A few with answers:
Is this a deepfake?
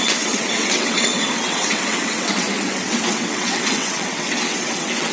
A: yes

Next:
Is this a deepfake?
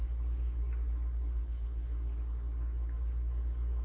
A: no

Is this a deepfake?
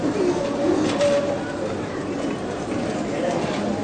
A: no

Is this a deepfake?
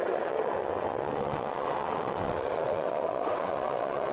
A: yes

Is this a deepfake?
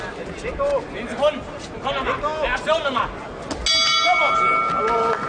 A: no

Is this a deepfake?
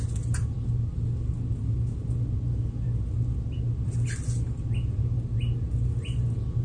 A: no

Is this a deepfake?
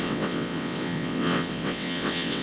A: yes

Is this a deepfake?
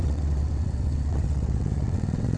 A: yes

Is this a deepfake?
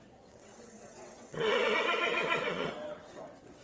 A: yes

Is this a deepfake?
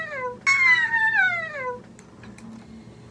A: no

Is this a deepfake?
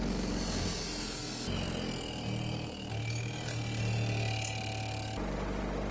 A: no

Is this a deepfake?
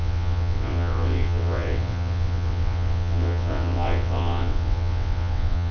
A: yes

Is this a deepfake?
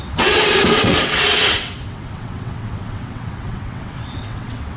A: yes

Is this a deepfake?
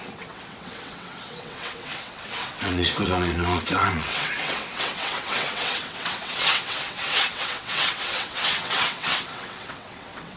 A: yes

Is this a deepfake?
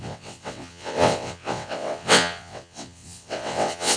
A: yes